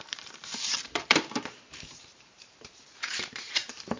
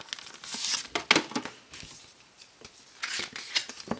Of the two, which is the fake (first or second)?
first